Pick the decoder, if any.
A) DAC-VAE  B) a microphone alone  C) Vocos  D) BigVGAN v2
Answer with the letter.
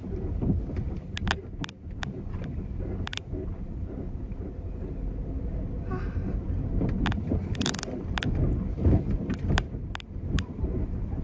B